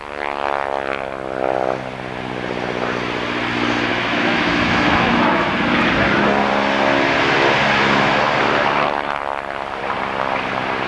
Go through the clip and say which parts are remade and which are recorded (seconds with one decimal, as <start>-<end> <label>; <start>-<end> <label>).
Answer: 0.0-3.9 recorded; 3.9-5.5 remade; 5.5-10.9 recorded